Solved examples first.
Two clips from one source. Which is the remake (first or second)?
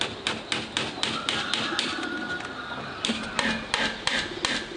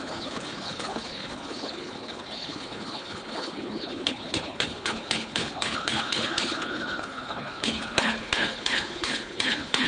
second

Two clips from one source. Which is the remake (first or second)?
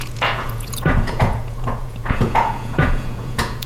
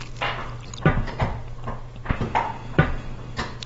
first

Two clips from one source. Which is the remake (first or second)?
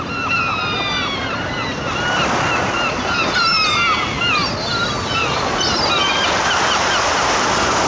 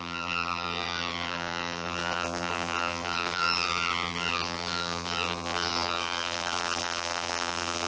second